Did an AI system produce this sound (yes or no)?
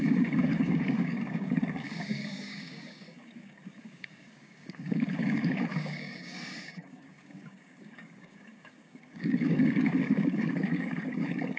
yes